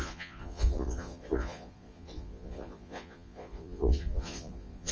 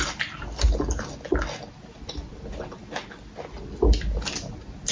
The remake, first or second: first